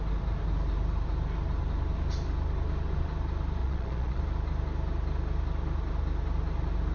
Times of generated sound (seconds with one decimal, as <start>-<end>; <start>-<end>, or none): 3.6-4.2